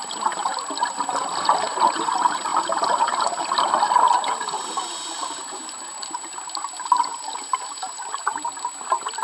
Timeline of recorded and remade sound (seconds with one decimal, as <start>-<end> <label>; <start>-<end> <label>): 0.0-9.2 recorded